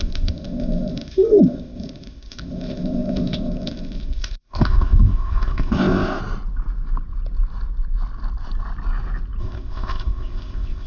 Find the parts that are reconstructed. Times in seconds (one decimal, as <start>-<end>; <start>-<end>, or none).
0.0-6.2; 9.4-10.9